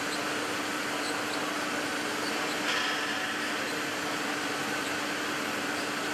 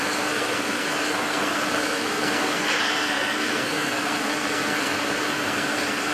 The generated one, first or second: second